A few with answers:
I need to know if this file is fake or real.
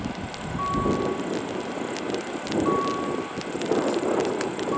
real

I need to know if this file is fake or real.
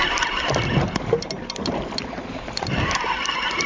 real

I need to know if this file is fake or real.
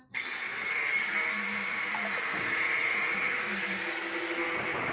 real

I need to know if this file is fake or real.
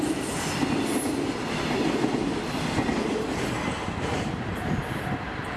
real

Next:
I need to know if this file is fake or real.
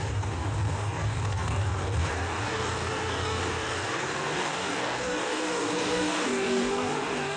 fake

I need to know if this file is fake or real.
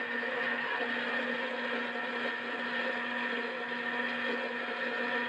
real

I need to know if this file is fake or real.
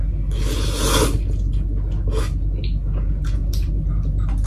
real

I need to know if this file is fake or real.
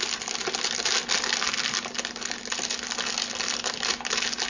real